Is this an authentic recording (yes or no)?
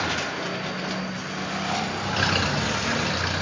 yes